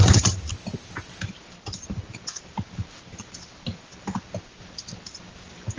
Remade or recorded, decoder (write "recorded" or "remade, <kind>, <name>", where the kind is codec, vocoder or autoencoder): recorded